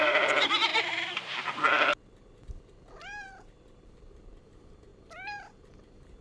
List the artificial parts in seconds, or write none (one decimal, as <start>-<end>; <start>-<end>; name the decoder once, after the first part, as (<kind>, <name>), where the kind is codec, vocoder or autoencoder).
0.0-6.2 (vocoder, BigVGAN v2)